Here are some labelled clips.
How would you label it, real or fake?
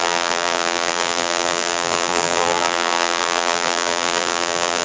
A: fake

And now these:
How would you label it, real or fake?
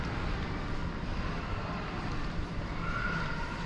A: fake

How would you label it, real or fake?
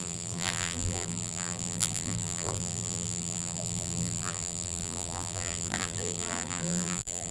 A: fake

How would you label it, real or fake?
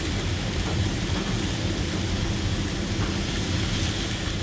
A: real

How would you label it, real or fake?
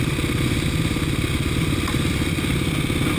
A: real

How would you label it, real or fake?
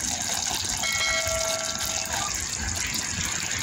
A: real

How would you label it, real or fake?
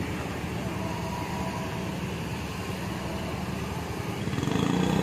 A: real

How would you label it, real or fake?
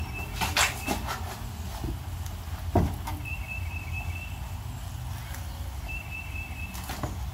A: real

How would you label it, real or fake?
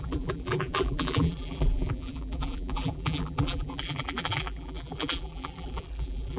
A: fake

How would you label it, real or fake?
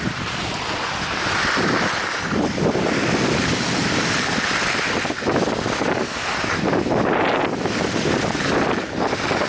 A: real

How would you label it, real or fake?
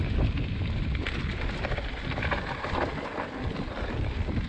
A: real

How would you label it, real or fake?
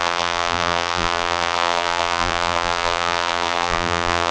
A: fake